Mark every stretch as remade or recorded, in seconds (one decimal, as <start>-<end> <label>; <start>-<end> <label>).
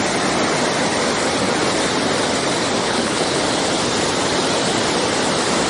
0.0-2.8 recorded; 2.8-3.4 remade; 3.4-5.7 recorded